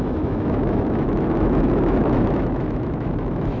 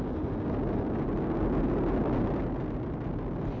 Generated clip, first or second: first